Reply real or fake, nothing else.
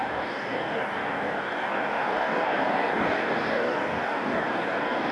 fake